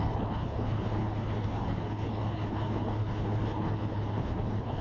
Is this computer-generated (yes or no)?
yes